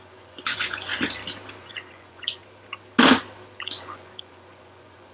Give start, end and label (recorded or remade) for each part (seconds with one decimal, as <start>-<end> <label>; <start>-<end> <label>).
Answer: 0.0-0.9 remade; 0.9-1.6 recorded; 1.6-2.4 remade; 2.4-3.6 recorded; 3.6-5.1 remade